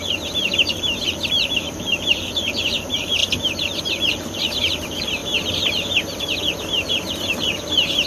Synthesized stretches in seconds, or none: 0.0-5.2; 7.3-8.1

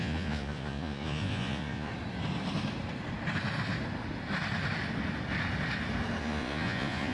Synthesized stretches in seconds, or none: 0.0-1.9; 6.2-7.1

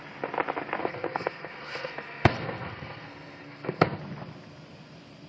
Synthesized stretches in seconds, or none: 0.8-4.0

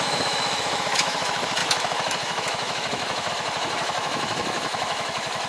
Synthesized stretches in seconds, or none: 0.0-5.5

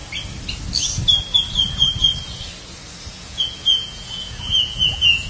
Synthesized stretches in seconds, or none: 3.1-5.3

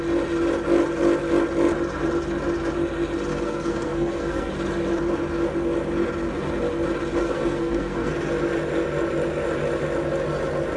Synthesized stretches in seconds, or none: 3.3-4.5; 7.2-8.1

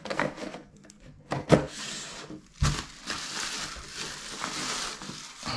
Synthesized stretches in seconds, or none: 0.0-1.8